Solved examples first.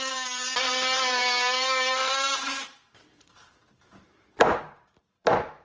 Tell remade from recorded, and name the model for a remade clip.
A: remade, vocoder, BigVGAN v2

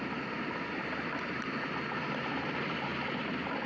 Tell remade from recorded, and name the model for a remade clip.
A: recorded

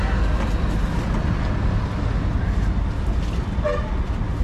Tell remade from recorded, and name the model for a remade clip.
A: recorded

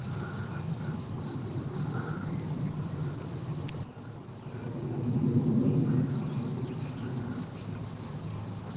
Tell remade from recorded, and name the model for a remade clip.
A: recorded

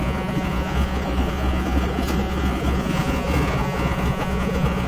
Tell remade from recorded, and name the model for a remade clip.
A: remade, vocoder, Vocos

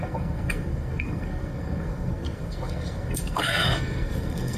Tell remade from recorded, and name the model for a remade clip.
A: remade, codec, SNAC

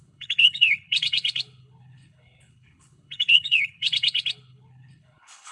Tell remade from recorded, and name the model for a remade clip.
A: remade, codec, HILCodec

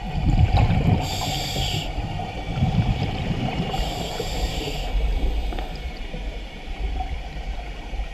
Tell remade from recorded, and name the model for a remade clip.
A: remade, vocoder, BigVGAN v2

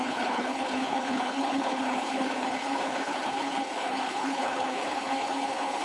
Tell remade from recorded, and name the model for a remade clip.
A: remade, codec, HILCodec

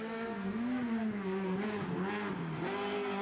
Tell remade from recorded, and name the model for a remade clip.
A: recorded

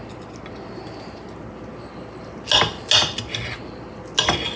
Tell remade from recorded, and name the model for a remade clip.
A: recorded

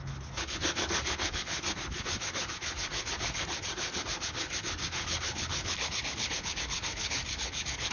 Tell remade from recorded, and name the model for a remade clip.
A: remade, codec, HILCodec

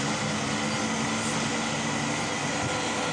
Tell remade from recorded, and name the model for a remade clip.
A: recorded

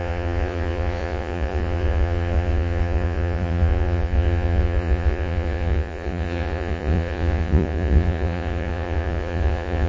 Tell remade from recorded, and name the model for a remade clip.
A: remade, vocoder, Vocos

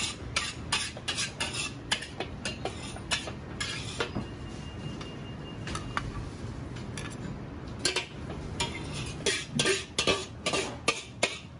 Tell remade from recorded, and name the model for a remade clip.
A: recorded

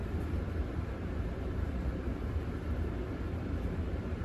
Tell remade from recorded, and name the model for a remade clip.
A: remade, vocoder, BigVGAN v2